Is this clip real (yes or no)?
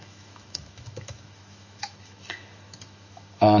no